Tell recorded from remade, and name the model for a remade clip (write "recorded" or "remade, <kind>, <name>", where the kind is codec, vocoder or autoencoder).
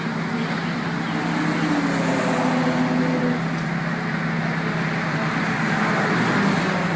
recorded